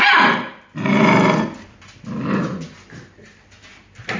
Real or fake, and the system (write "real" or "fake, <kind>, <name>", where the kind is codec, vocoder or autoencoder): real